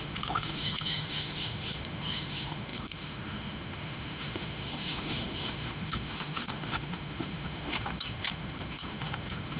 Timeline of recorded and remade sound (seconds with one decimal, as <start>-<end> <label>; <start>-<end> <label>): 0.0-9.6 remade